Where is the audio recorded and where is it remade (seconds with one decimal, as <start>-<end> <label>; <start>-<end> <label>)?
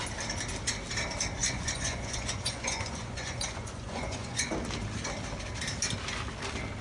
0.0-1.4 recorded; 1.4-4.5 remade; 4.5-6.8 recorded